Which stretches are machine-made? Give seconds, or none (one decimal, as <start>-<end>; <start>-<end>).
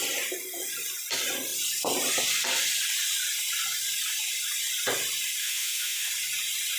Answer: 5.4-6.1